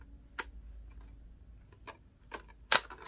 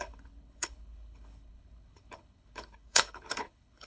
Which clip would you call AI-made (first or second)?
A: second